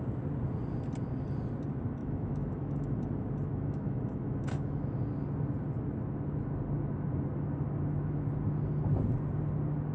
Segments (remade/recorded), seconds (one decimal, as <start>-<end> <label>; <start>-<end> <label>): 0.0-2.0 recorded; 2.0-3.0 remade; 3.0-3.5 recorded; 3.5-5.0 remade; 5.0-9.9 recorded